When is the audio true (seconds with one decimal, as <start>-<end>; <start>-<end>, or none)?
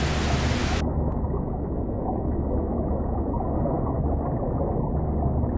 0.0-0.6; 4.0-5.6